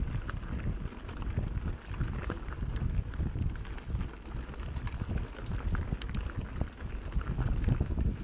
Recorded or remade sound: recorded